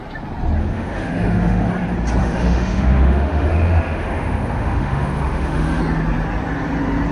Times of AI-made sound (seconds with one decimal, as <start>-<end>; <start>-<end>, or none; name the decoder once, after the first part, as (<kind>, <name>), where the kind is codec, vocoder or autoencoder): 0.6-1.7 (autoencoder, DAC-VAE); 2.2-5.8